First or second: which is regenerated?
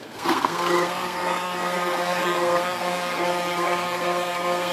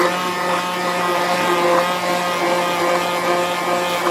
first